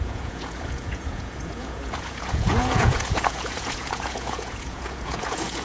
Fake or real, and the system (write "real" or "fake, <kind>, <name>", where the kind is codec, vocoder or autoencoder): fake, vocoder, Vocos